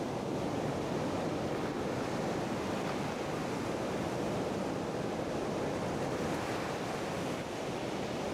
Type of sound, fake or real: real